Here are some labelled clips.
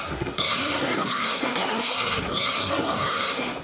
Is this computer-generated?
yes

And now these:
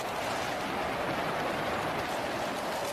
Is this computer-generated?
no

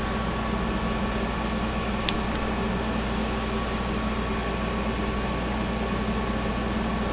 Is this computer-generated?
no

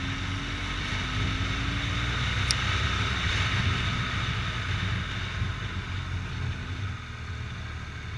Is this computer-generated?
no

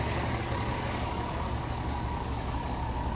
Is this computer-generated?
yes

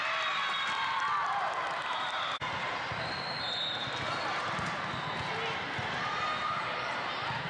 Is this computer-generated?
no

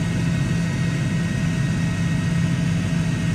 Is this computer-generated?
no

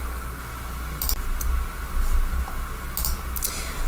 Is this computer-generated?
no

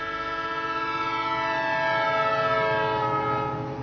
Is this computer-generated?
no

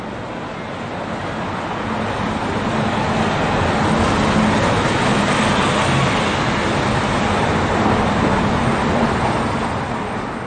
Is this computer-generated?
no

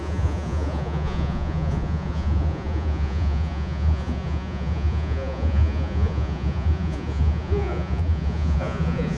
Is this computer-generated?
yes